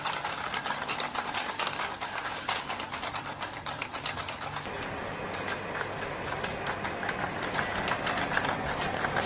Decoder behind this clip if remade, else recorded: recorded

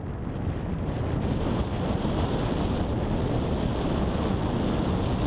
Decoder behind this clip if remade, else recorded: recorded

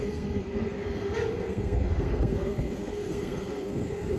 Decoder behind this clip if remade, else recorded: remade, codec, SNAC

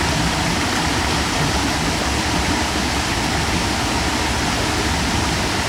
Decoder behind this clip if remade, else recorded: recorded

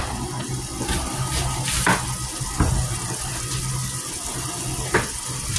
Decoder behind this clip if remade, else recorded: recorded